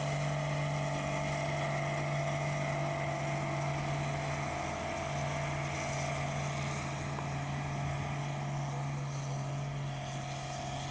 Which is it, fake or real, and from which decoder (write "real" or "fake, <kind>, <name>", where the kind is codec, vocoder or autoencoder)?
real